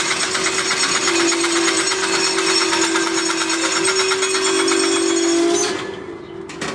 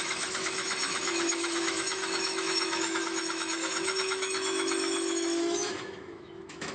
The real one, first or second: first